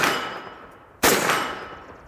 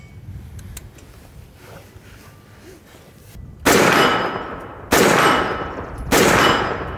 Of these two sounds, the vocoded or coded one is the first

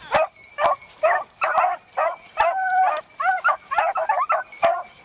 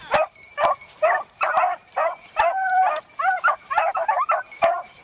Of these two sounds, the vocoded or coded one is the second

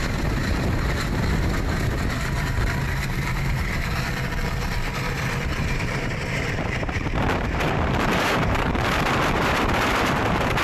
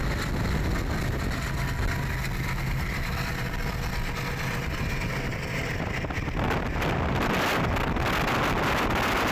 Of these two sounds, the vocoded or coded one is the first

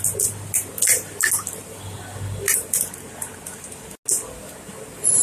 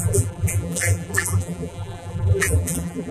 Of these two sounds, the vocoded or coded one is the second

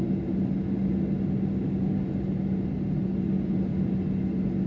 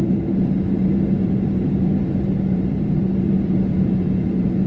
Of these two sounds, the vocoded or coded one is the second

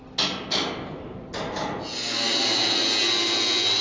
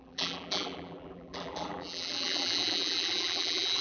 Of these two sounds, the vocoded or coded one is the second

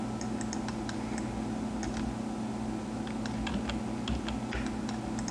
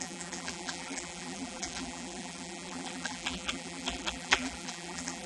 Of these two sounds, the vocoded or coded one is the second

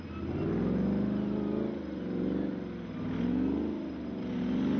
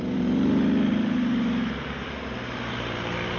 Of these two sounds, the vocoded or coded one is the second